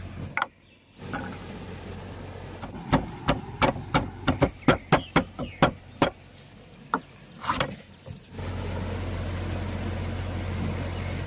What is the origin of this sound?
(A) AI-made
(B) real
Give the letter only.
B